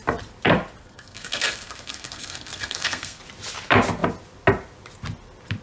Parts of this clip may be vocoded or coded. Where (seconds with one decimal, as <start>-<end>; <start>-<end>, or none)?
0.8-3.2

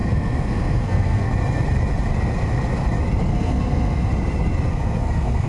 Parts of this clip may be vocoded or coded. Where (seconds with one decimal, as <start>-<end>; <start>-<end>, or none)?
0.0-1.3; 3.3-4.1; 4.7-5.5

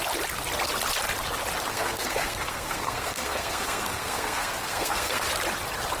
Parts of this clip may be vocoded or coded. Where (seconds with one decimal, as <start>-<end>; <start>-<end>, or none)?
1.7-5.3

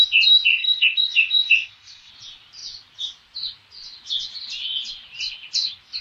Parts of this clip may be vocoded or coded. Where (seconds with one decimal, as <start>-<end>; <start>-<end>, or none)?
0.6-2.1

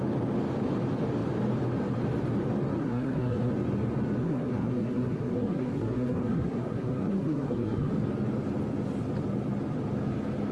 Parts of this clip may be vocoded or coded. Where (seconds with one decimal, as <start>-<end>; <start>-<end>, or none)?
2.8-3.5; 4.2-7.9

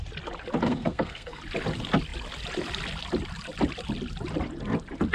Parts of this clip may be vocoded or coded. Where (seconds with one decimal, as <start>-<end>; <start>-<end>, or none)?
0.7-1.4

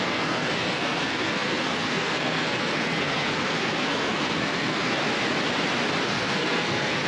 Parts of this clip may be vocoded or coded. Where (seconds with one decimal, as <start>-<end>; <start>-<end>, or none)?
0.0-5.0; 6.0-7.1